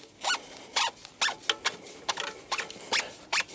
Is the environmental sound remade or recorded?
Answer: recorded